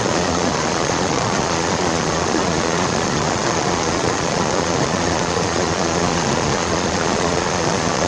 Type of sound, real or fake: fake